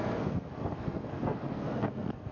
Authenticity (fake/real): fake